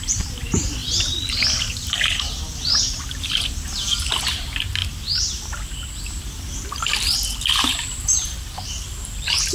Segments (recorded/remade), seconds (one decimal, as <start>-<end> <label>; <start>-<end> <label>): 0.0-4.8 remade; 4.8-6.0 recorded; 6.0-9.5 remade